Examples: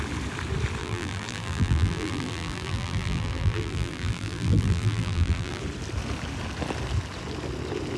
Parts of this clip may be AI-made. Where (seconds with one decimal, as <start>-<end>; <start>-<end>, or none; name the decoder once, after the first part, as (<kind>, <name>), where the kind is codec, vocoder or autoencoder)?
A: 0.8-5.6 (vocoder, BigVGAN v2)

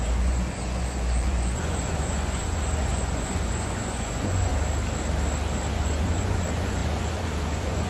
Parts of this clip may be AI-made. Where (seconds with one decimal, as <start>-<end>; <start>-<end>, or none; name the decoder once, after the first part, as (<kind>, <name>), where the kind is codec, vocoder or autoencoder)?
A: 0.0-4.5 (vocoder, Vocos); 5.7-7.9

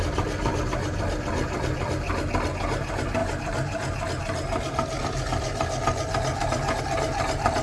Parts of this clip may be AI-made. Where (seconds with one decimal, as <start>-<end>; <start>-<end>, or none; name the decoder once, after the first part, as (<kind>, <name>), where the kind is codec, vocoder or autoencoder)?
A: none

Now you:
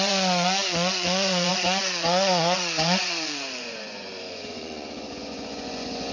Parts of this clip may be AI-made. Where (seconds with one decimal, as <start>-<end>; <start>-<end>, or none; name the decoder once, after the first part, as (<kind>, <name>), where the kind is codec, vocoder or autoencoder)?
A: 0.0-6.1 (vocoder, Vocos)